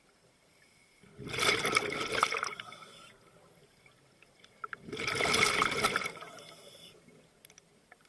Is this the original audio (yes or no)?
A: yes